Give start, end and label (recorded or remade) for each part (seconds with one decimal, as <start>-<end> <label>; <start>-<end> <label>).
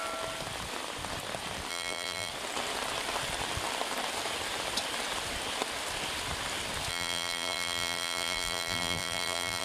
0.0-1.7 recorded; 1.7-2.3 remade; 2.3-6.9 recorded; 6.9-9.6 remade